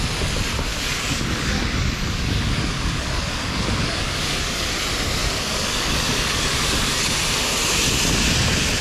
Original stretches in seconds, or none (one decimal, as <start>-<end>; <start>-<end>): 0.0-0.7; 4.7-5.2; 7.1-8.8